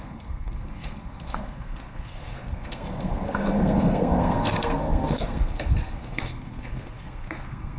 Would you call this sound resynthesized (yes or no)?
yes